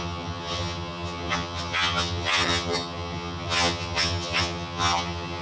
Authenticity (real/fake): fake